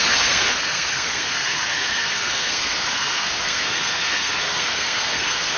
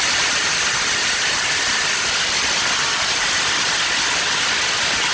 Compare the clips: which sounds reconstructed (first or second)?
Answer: first